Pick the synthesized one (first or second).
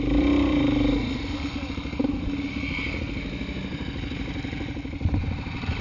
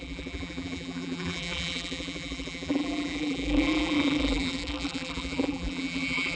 second